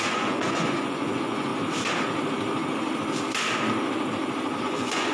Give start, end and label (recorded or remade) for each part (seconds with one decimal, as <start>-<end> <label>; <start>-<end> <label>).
0.0-1.5 remade; 1.5-4.6 recorded; 4.6-5.1 remade